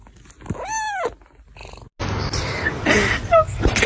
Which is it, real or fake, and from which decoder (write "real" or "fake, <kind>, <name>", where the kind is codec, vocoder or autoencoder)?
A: real